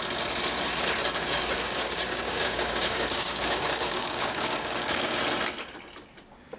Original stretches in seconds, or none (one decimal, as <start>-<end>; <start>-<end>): 0.0-1.2; 5.2-6.6